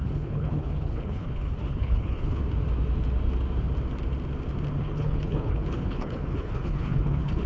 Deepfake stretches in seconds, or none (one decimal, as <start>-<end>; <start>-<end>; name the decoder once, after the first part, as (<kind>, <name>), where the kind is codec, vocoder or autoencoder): 0.0-2.4 (codec, HILCodec); 4.8-7.5